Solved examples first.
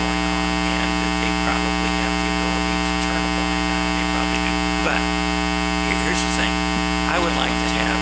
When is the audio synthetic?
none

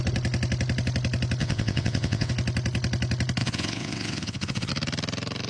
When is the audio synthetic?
1.4-2.3; 3.4-4.7

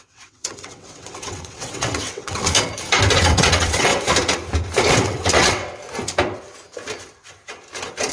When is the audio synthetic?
0.0-2.5; 3.2-3.9; 4.9-5.6